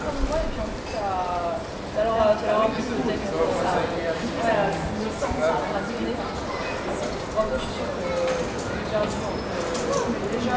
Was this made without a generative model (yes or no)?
yes